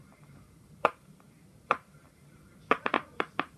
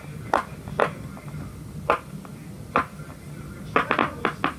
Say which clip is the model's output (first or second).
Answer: first